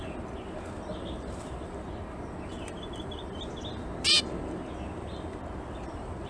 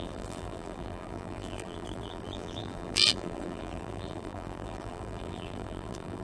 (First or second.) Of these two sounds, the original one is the first